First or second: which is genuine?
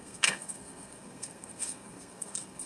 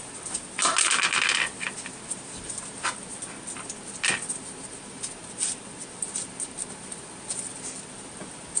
second